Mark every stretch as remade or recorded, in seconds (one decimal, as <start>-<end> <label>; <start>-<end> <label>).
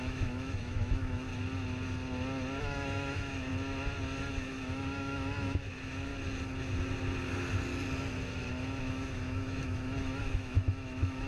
0.0-1.3 remade; 1.3-2.6 recorded; 2.6-3.5 remade; 3.5-4.3 recorded; 4.3-6.1 remade; 6.1-8.8 recorded; 8.8-11.3 remade